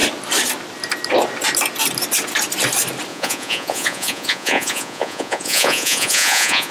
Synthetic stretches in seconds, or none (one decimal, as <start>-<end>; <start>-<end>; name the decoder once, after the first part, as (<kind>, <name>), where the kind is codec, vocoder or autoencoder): 3.1-6.7 (vocoder, Vocos)